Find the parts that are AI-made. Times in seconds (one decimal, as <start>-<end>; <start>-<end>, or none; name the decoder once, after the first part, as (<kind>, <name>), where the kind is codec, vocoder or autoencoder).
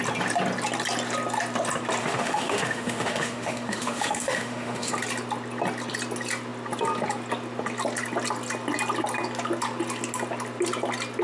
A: 2.0-4.9 (autoencoder, DAC-VAE)